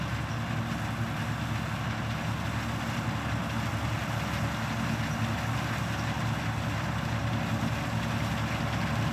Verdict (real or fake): real